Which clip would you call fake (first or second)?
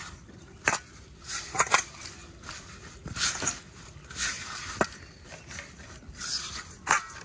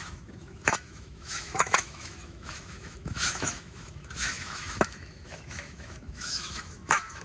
second